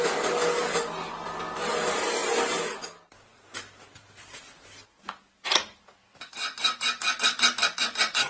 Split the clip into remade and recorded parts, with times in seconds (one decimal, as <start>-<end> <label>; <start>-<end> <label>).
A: 0.0-8.3 recorded